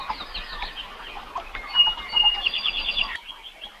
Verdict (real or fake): real